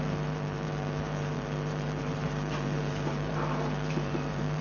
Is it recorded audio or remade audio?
remade